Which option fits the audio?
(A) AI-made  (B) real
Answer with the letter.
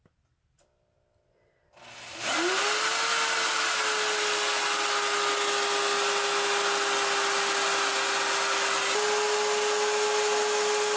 B